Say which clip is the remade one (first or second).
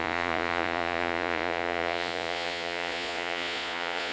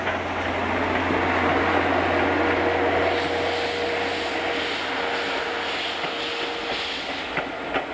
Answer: first